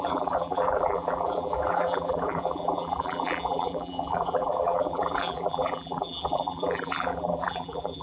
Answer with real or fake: fake